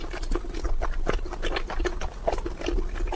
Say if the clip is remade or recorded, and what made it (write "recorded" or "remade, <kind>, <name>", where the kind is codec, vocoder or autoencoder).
recorded